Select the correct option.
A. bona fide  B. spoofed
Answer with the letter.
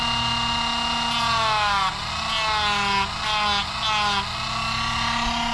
A